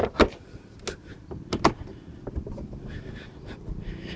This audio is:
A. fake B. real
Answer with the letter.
B